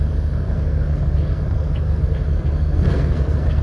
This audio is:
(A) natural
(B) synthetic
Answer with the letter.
B